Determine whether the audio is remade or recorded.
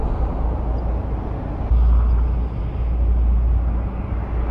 recorded